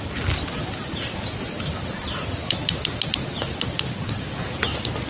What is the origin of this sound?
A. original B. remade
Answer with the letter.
A